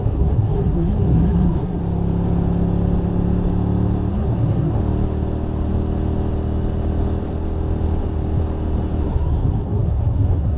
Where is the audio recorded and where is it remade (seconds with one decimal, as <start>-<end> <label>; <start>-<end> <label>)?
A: 0.0-1.8 remade; 1.8-4.1 recorded; 4.1-4.8 remade; 4.8-9.0 recorded; 9.0-10.6 remade